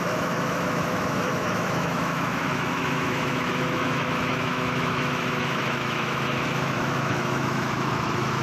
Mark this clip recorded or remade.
remade